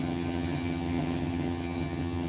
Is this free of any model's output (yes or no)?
no